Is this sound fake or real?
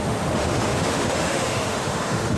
fake